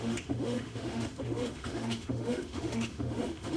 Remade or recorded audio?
remade